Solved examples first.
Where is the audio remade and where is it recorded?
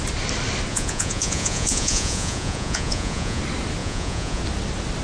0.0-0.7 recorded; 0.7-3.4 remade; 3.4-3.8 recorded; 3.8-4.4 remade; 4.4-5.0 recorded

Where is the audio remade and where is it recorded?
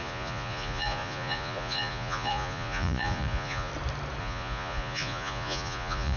0.0-3.7 remade; 3.7-4.2 recorded; 4.2-6.2 remade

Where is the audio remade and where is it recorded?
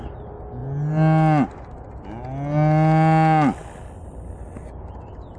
0.0-5.4 recorded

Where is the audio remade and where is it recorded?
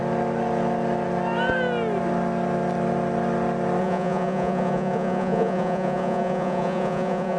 0.0-3.8 recorded; 3.8-7.4 remade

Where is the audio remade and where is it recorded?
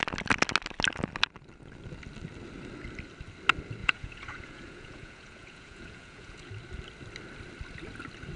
0.0-3.8 recorded; 3.8-6.5 remade; 6.5-8.4 recorded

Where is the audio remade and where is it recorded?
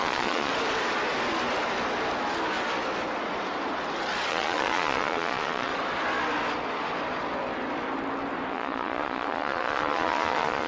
0.0-0.5 remade; 0.5-4.3 recorded; 4.3-5.7 remade; 5.7-8.5 recorded; 8.5-10.7 remade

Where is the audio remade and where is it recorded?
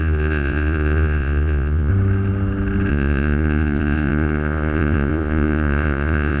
0.0-1.9 remade; 1.9-2.9 recorded; 2.9-6.4 remade